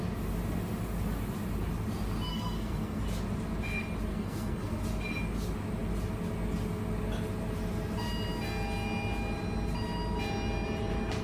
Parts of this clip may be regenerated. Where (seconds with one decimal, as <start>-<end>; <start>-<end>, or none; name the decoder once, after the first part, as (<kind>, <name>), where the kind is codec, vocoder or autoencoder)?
2.3-3.0 (codec, SNAC); 4.1-4.8